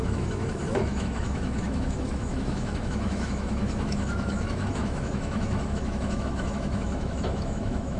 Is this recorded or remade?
remade